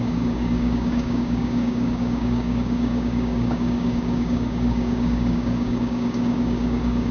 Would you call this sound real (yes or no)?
no